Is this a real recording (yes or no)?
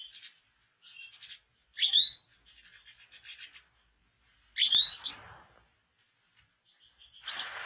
yes